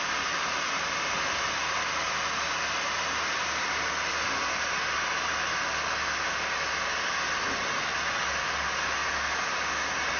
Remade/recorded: recorded